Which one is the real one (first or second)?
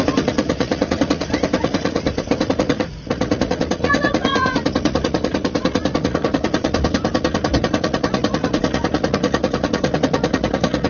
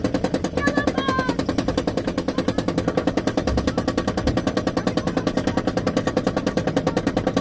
second